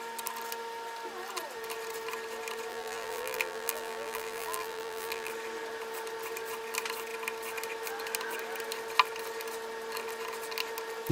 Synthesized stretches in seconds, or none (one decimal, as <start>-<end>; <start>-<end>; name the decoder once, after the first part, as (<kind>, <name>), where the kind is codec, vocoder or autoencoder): 2.7-5.3 (vocoder, BigVGAN v2)